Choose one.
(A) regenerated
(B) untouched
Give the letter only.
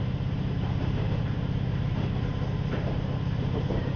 A